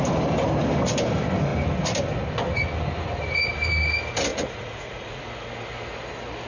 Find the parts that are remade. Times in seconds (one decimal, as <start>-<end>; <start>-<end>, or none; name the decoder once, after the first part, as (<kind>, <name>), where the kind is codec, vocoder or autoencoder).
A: 4.3-5.2 (vocoder, Vocos)